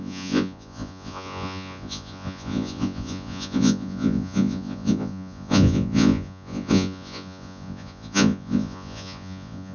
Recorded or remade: remade